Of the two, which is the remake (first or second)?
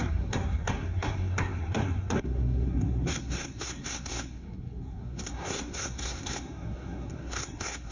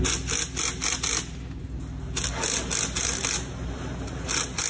first